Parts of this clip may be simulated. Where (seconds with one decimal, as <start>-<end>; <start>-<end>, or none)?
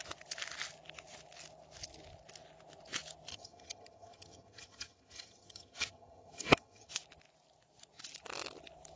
3.3-6.9